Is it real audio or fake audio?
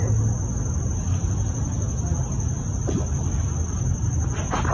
real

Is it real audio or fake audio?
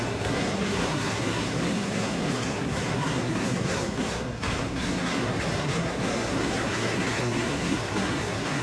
fake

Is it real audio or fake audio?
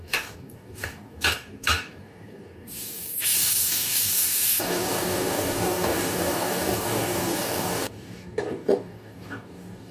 fake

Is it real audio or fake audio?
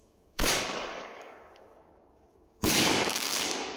fake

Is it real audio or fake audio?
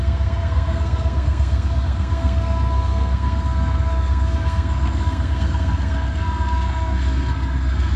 fake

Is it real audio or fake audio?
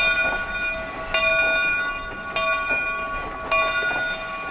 real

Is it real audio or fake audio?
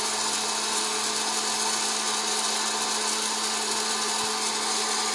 real